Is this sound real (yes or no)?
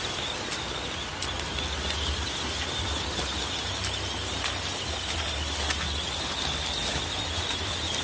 yes